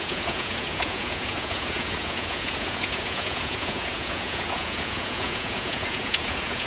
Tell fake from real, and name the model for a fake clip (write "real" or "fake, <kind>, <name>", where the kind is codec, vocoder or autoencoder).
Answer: fake, vocoder, Vocos